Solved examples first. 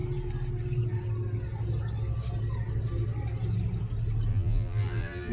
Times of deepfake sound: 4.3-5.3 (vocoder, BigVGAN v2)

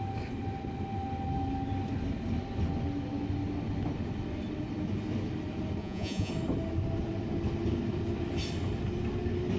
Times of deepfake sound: 5.8-6.3 (vocoder, Vocos)

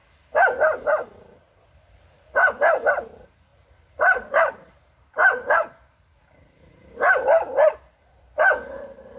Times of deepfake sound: none

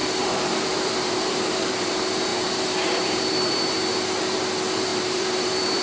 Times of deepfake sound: 0.0-1.9 (vocoder, BigVGAN v2); 2.3-3.5; 4.9-5.8

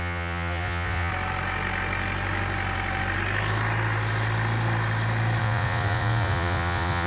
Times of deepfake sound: 0.0-1.1 (vocoder, Vocos); 5.4-7.1

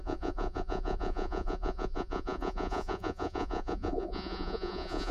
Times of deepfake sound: 0.0-5.1 (vocoder, Vocos)

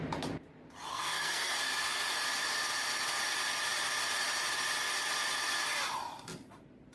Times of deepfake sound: 0.9-1.6 (codec, SNAC)

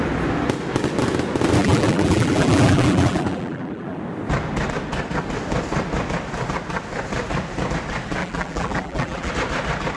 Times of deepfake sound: 1.6-4.0 (vocoder, BigVGAN v2); 8.2-9.3